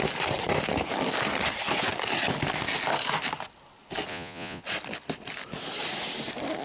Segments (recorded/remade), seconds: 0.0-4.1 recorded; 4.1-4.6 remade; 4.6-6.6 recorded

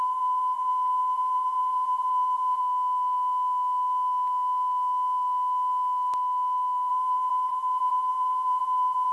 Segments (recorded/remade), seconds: 0.0-2.6 remade; 2.6-6.9 recorded; 6.9-9.1 remade